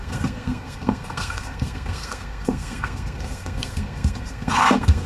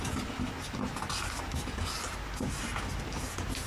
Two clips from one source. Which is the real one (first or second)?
second